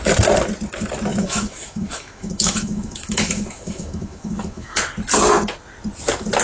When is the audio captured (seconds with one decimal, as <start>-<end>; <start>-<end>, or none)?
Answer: 0.0-1.1; 4.9-6.4